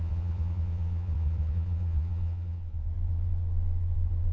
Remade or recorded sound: remade